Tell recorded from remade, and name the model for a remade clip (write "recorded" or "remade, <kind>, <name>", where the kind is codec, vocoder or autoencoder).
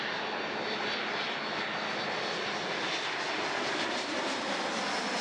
recorded